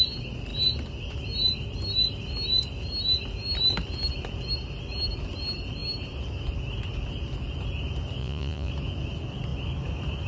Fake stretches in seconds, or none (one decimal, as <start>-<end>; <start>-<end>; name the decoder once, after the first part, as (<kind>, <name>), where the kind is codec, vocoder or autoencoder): 8.2-8.7 (vocoder, Vocos)

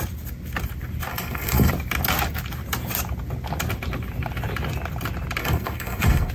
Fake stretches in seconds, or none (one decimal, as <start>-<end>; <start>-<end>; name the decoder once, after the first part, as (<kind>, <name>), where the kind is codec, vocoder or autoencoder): 1.1-1.7 (codec, SNAC); 5.4-6.3

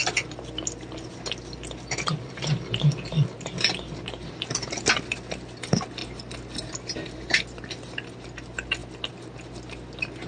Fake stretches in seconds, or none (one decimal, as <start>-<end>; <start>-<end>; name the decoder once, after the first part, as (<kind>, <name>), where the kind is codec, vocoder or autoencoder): none

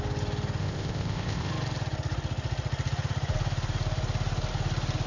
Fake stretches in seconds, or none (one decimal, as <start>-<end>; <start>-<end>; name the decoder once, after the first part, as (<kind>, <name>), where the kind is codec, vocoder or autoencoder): 0.6-1.5 (codec, ZipCodec)

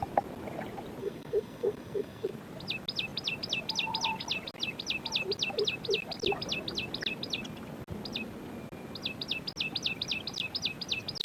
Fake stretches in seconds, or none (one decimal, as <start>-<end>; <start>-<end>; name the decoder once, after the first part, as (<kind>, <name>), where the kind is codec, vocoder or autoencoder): 1.0-2.3 (codec, SNAC)

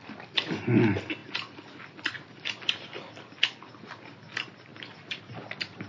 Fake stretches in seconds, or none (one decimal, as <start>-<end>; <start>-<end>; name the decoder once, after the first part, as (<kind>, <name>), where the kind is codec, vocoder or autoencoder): none

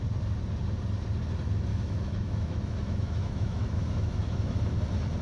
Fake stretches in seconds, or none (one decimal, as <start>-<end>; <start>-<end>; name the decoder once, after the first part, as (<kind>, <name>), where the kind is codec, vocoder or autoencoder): 1.7-4.6 (autoencoder, DAC-VAE)